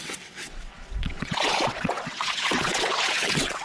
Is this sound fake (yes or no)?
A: yes